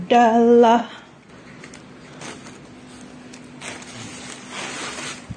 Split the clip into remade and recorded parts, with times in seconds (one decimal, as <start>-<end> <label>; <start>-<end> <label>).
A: 0.0-0.8 recorded; 0.8-1.3 remade; 1.3-5.4 recorded